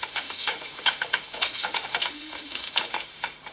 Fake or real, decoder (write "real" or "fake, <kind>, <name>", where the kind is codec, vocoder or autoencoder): fake, autoencoder, DAC-VAE